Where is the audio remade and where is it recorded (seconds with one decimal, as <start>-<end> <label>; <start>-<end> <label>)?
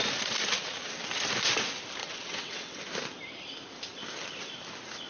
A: 0.0-2.0 recorded; 2.0-2.8 remade; 2.8-5.1 recorded